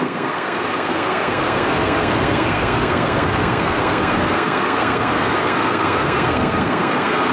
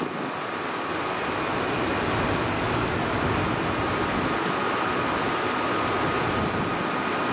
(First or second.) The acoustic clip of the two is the second